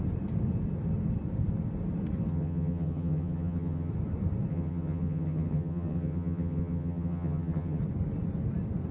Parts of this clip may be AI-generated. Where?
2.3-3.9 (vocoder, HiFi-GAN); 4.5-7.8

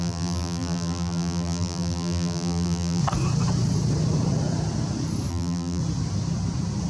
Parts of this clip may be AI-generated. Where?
0.0-3.0 (vocoder, BigVGAN v2); 5.3-5.8

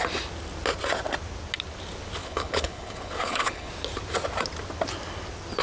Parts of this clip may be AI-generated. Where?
2.2-3.7 (codec, HILCodec)

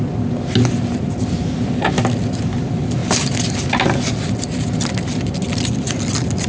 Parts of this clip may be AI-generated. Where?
none